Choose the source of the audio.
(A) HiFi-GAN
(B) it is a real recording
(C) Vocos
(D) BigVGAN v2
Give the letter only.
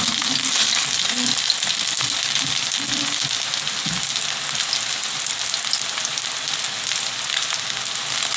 B